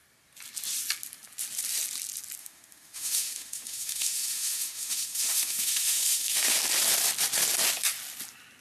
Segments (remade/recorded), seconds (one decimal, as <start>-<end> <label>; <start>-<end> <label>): 0.0-2.4 recorded; 2.4-6.6 remade; 6.6-8.6 recorded